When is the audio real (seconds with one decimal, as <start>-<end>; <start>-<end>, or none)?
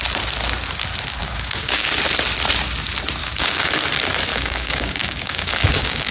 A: 0.0-1.2; 1.9-3.2; 3.7-4.3